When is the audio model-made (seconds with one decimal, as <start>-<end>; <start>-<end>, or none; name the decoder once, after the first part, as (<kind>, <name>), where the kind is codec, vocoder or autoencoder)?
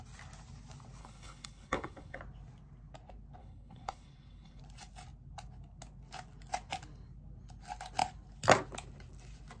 1.0-2.2 (codec, HILCodec); 3.4-4.6